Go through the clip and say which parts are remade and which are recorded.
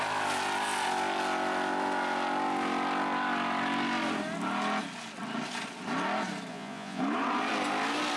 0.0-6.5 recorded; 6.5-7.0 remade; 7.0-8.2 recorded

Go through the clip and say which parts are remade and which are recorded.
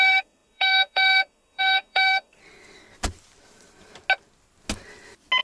0.0-2.4 remade; 2.4-5.4 recorded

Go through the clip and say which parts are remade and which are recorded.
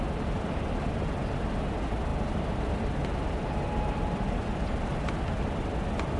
0.0-6.2 recorded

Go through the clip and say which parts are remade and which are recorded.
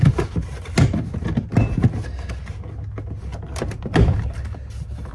0.0-5.1 recorded